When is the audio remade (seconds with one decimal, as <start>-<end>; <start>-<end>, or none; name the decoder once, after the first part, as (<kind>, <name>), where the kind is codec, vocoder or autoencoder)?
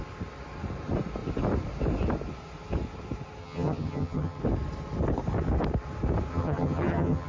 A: 3.4-4.4 (vocoder, HiFi-GAN); 6.3-7.3